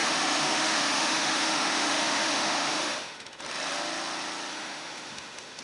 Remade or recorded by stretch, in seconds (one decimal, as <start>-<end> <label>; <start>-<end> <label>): 0.0-3.4 remade; 3.4-4.5 recorded; 4.5-5.6 remade

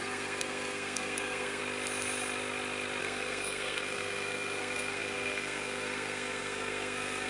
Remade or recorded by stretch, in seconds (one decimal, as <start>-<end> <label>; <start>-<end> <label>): 0.0-1.6 remade; 1.6-3.0 recorded; 3.0-7.3 remade